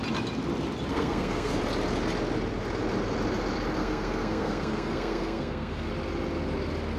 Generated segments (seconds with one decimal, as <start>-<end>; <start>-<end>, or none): 0.9-1.6; 3.8-5.9